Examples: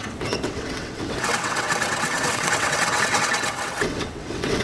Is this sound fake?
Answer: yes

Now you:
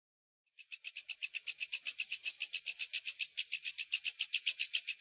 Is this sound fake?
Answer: no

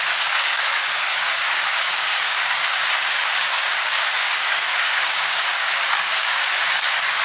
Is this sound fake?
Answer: yes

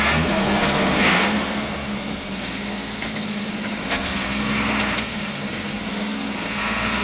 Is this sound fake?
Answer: yes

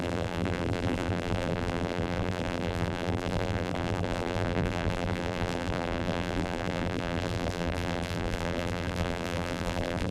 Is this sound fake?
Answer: yes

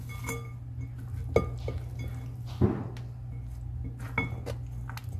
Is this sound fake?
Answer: no